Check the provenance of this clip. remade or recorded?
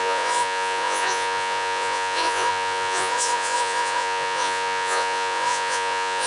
remade